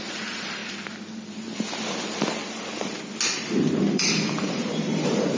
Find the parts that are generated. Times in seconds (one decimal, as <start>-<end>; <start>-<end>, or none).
0.0-0.6; 3.8-5.4